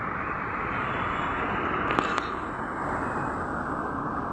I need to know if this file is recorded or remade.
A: remade